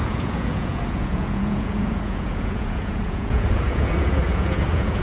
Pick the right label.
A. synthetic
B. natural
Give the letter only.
A